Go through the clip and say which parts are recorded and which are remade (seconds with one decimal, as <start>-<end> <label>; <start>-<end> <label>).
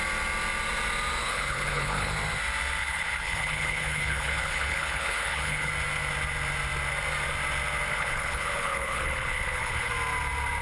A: 0.0-1.2 recorded; 1.2-2.1 remade; 2.1-2.8 recorded; 2.8-5.7 remade; 5.7-7.9 recorded; 7.9-9.9 remade; 9.9-10.6 recorded